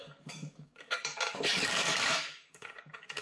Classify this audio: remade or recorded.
remade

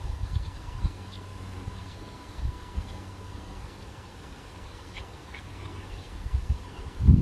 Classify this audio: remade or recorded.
remade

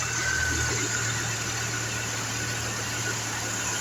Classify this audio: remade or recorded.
recorded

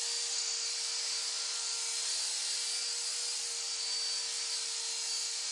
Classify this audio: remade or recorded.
recorded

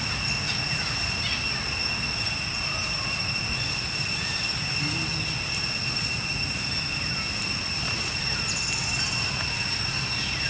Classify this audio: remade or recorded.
recorded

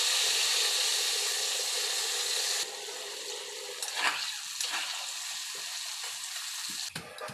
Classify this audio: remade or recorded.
recorded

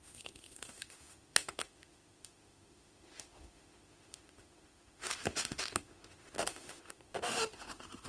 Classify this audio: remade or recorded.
remade